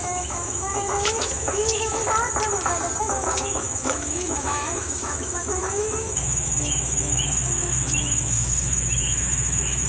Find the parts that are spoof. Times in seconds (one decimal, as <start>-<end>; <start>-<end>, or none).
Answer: 0.0-2.0; 3.0-9.9